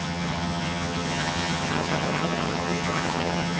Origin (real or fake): fake